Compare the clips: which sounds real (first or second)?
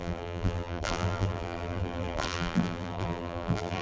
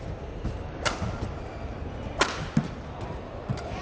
second